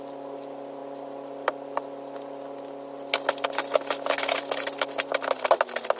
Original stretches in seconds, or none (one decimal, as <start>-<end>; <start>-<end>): 0.0-6.0